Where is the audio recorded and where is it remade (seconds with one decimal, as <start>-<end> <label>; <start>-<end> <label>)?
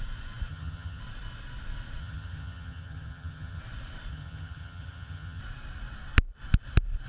0.0-0.5 recorded; 0.5-1.0 remade; 1.0-2.0 recorded; 2.0-3.6 remade; 3.6-4.1 recorded; 4.1-5.4 remade; 5.4-7.1 recorded